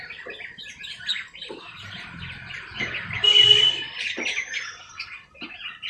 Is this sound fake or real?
real